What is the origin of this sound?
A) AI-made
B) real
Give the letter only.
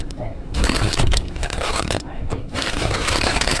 A